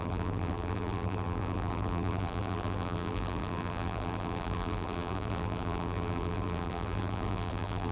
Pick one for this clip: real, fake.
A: fake